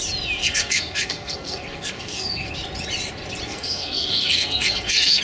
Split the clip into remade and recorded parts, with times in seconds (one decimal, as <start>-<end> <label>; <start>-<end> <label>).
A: 0.0-0.4 recorded; 0.4-2.5 remade; 2.5-3.5 recorded; 3.5-5.2 remade